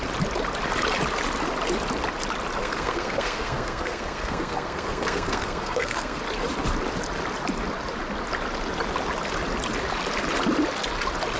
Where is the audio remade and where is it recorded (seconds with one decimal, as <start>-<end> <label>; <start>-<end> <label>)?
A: 0.0-2.6 recorded; 2.6-6.2 remade; 6.2-11.4 recorded